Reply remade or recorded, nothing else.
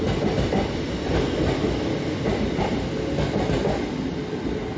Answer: recorded